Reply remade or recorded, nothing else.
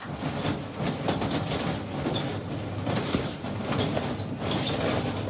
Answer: recorded